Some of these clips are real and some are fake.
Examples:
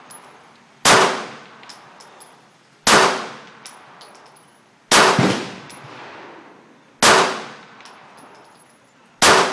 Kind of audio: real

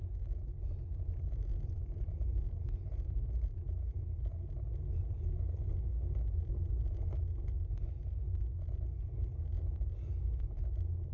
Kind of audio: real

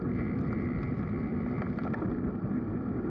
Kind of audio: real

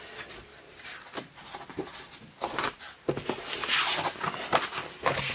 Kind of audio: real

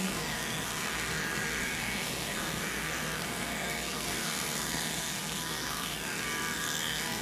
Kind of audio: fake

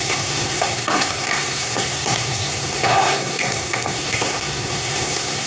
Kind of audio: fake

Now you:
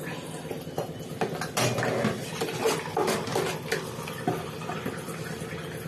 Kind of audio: real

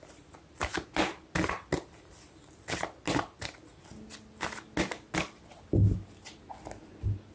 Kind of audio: real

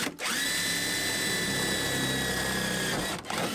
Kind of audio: real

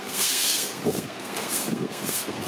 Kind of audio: fake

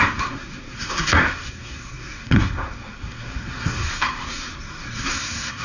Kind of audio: fake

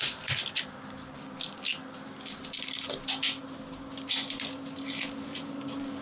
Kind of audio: real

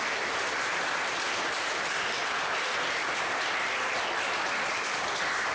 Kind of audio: real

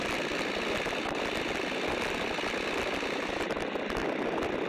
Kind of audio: real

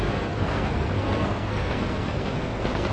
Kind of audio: fake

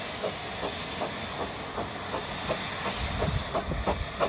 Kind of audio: real